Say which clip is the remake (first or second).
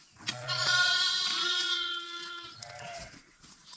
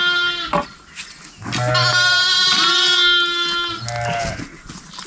first